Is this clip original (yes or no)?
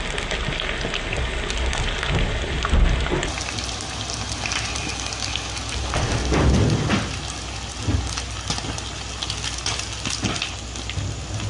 yes